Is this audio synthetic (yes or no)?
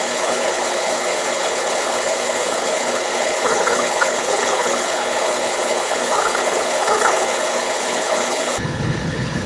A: yes